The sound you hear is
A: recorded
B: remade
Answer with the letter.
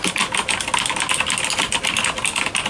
A